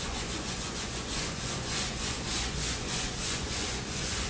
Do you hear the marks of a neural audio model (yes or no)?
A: yes